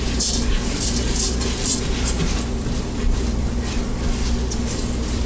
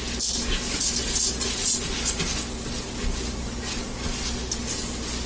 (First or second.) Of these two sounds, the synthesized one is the first